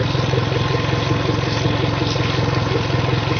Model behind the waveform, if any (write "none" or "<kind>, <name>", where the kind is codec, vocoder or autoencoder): none